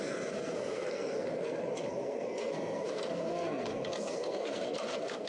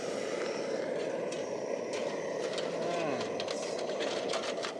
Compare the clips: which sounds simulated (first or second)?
first